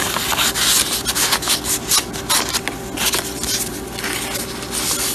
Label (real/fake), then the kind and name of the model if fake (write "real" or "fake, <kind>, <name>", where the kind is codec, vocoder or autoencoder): real